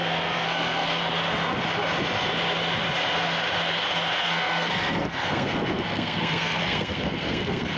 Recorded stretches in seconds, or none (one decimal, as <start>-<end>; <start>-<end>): 1.0-4.2